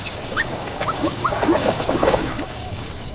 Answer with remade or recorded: remade